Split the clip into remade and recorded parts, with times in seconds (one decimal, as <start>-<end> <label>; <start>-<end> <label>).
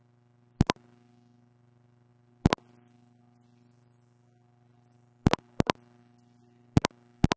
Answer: 0.0-7.4 recorded